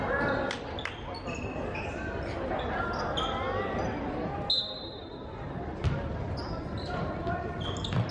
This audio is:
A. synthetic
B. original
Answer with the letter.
B